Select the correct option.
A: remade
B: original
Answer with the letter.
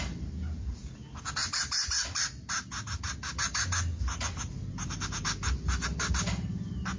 B